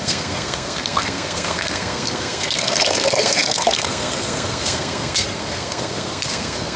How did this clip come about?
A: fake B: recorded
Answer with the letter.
A